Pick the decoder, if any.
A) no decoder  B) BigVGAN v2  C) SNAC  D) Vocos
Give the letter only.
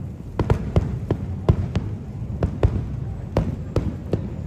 A